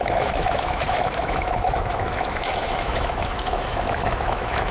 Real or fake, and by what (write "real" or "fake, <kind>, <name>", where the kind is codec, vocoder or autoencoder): fake, autoencoder, DAC-VAE